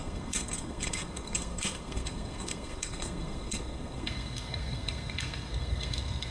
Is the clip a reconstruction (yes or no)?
yes